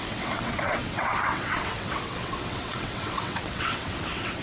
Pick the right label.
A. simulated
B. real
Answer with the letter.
A